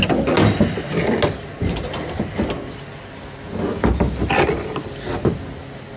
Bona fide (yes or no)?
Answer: yes